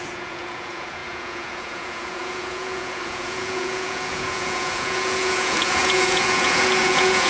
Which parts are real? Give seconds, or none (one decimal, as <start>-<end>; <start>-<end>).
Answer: none